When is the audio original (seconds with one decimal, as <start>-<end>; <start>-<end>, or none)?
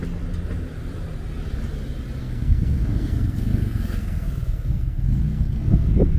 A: 0.0-2.2